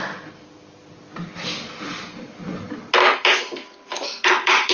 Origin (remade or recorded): recorded